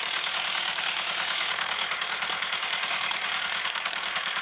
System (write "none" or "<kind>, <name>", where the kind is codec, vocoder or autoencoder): codec, DAC